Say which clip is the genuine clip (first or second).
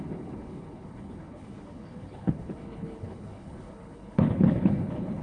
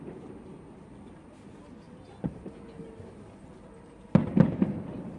second